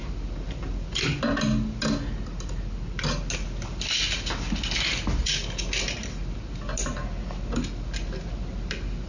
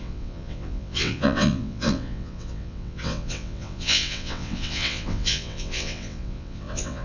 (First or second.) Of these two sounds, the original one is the first